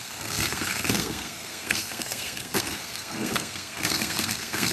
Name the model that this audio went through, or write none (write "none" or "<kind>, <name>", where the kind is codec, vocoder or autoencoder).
codec, SNAC